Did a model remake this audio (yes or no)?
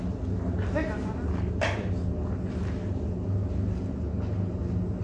no